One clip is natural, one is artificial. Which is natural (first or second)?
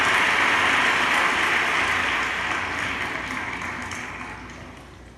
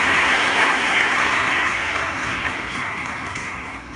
first